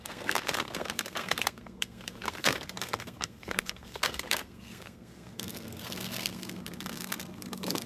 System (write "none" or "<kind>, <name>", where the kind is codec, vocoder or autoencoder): codec, SNAC